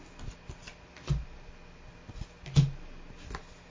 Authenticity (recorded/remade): recorded